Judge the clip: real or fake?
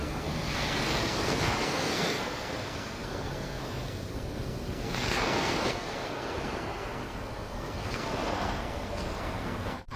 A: fake